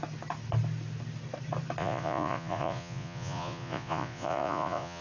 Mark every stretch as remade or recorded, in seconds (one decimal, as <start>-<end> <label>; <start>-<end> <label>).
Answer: 0.0-1.8 recorded; 1.8-5.0 remade